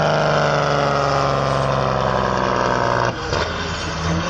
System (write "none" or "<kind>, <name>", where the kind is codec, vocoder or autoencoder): none